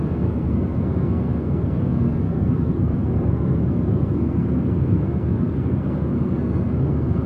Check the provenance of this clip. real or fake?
fake